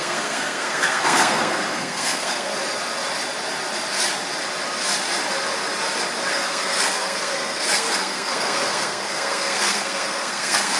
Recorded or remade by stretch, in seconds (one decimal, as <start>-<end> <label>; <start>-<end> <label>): 0.0-2.5 remade; 2.5-6.3 recorded; 6.3-10.8 remade

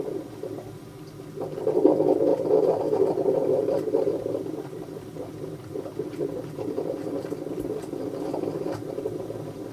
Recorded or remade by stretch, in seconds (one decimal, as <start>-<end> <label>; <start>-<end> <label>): 0.0-2.3 recorded; 2.3-7.1 remade; 7.1-9.7 recorded

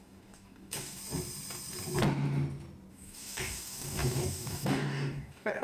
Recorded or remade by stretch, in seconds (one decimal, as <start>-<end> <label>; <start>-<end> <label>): 0.0-1.0 remade; 1.0-2.9 recorded; 2.9-5.6 remade

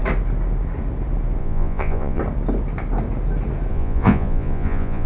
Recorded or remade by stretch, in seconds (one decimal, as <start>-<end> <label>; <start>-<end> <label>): 0.0-1.4 recorded; 1.4-2.2 remade; 2.2-3.7 recorded; 3.7-5.1 remade